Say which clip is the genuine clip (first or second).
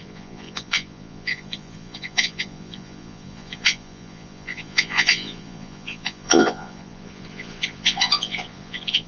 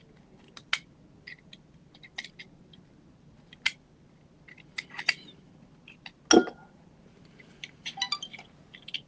second